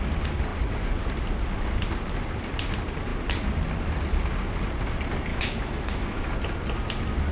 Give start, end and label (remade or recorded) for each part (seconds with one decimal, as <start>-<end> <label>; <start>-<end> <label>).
0.0-5.3 recorded; 5.3-6.2 remade; 6.2-7.3 recorded